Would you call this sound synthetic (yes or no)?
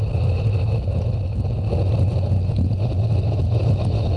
no